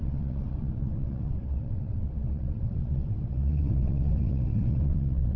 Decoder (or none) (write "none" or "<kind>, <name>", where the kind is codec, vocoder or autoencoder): vocoder, WaveNeXt